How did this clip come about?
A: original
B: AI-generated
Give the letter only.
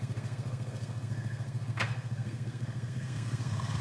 B